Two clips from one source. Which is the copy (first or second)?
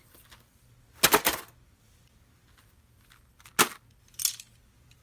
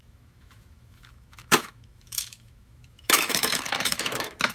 second